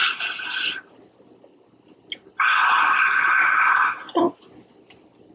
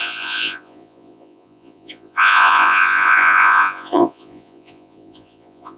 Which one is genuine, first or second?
first